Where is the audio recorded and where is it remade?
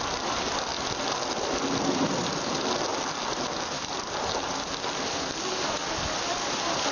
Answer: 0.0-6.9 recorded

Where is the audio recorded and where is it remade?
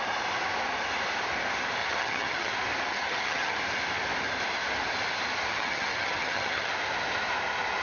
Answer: 0.0-1.8 recorded; 1.8-2.5 remade; 2.5-2.9 recorded; 2.9-3.6 remade; 3.6-5.5 recorded; 5.5-6.7 remade; 6.7-7.8 recorded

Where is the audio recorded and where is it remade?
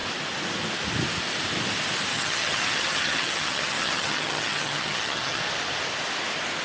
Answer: 0.0-2.1 recorded; 2.1-5.4 remade; 5.4-6.6 recorded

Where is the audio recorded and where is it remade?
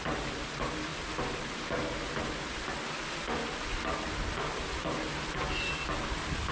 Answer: 0.0-6.5 recorded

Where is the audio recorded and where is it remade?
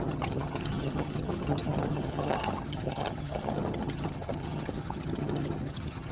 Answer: 0.0-6.1 remade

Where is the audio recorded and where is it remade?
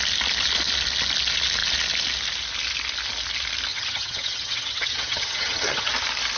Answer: 0.0-3.7 recorded; 3.7-5.9 remade; 5.9-6.4 recorded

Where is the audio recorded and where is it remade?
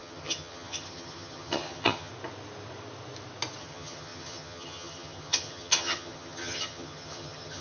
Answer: 0.0-2.1 remade; 2.1-3.6 recorded; 3.6-7.6 remade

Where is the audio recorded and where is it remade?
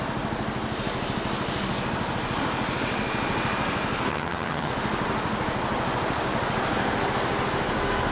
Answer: 0.0-4.1 recorded; 4.1-4.7 remade; 4.7-8.1 recorded